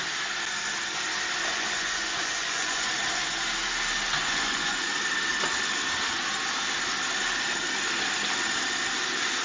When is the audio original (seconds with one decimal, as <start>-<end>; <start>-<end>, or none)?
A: 0.0-1.5; 2.9-4.2; 4.8-9.4